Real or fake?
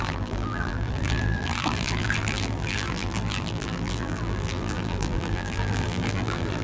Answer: fake